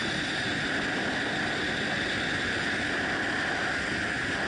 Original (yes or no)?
yes